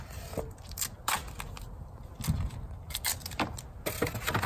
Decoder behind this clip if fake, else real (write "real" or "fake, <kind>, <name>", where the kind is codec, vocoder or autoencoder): real